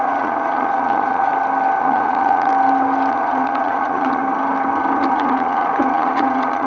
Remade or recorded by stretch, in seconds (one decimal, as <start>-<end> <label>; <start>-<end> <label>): 0.0-1.3 remade; 1.3-1.8 recorded; 1.8-2.5 remade; 2.5-3.1 recorded; 3.1-4.2 remade; 4.2-5.1 recorded; 5.1-6.7 remade